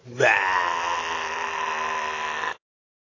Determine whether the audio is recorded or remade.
recorded